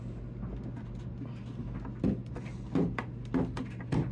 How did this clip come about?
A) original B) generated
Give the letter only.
A